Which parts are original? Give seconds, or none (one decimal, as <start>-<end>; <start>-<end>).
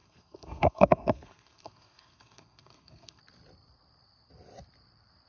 3.2-5.3